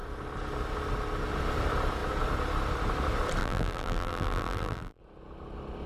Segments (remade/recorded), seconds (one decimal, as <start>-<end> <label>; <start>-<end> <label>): 0.0-3.4 recorded; 3.4-5.0 remade; 5.0-5.9 recorded